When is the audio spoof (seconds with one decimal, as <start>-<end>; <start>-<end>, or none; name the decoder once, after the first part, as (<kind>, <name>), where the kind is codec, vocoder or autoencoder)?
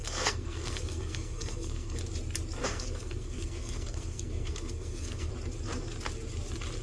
0.0-2.0 (codec, SNAC); 2.6-5.3